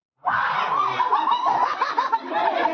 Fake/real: real